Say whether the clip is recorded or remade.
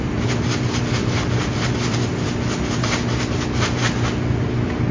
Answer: recorded